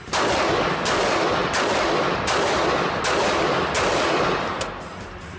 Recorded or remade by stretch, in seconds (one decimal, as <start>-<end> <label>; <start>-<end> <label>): 0.0-5.4 recorded